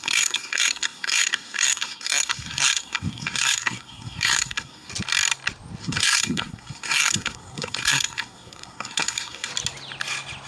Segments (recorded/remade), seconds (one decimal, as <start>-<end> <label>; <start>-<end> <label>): 0.0-4.9 remade; 4.9-5.8 recorded; 5.8-9.5 remade; 9.5-10.5 recorded